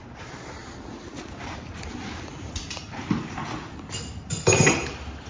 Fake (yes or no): no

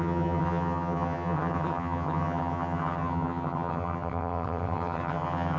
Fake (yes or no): yes